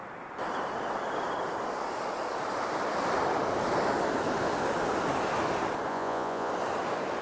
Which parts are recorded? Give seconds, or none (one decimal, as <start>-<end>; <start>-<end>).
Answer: 0.0-5.9; 6.5-7.2